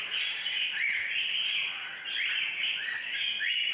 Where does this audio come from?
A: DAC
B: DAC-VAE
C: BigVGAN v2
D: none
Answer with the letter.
D